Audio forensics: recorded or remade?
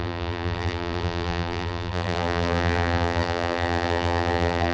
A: remade